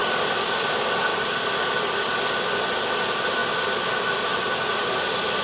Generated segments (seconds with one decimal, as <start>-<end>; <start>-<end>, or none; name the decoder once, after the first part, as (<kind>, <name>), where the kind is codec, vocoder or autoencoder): none